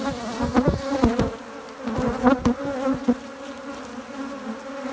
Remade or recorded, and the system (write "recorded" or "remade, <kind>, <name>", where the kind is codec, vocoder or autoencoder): recorded